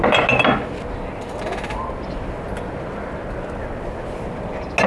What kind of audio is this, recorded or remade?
recorded